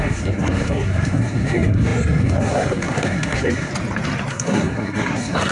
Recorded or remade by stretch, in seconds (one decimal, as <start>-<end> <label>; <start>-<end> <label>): 0.0-3.7 remade; 3.7-4.3 recorded; 4.3-5.5 remade